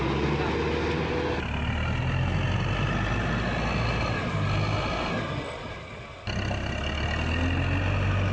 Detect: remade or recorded recorded